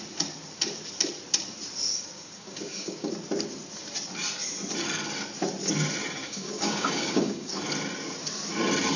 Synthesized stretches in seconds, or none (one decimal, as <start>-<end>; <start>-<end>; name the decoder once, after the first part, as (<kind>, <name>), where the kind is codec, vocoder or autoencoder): 1.9-3.1 (codec, DAC); 6.2-7.6